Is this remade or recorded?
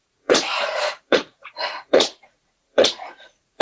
remade